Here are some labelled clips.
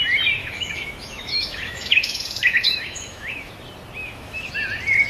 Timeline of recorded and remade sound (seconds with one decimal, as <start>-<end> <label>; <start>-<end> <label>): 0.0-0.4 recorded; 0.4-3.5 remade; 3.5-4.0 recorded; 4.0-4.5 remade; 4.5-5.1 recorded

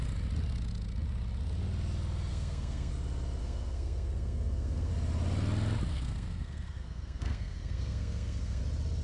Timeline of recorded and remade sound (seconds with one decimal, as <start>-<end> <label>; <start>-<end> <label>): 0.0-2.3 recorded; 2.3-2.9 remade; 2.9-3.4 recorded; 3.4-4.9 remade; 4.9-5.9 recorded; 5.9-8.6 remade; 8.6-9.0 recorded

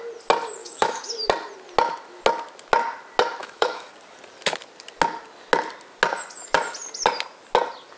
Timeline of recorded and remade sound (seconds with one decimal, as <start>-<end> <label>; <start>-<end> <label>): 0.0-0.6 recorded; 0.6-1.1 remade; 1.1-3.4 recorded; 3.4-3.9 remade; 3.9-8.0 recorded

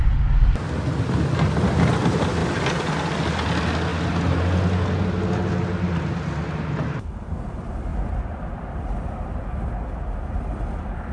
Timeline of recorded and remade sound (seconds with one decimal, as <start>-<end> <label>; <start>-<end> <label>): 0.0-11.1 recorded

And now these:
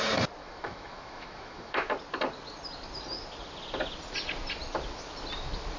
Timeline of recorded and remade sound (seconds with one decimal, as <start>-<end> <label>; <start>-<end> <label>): 0.0-0.4 recorded; 0.4-1.9 remade; 1.9-5.8 recorded

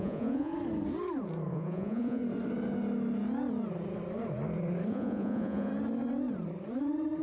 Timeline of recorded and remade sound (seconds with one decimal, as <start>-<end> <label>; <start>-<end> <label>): 0.0-0.5 remade; 0.5-1.5 recorded; 1.5-2.2 remade; 2.2-4.9 recorded; 4.9-5.7 remade; 5.7-7.2 recorded

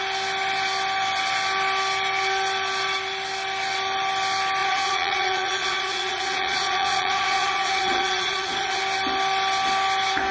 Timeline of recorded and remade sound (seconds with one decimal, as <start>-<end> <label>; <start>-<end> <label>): 0.0-4.6 recorded; 4.6-8.8 remade; 8.8-10.3 recorded